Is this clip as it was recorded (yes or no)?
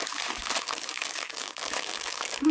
no